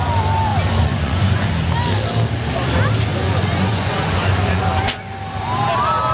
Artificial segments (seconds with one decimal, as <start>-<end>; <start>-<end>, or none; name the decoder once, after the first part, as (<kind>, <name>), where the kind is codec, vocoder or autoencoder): 0.5-1.4 (vocoder, Vocos); 3.1-4.6